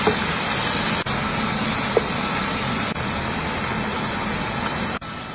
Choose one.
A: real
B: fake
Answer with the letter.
A